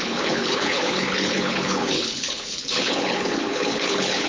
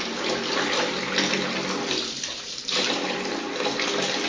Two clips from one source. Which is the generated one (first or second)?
first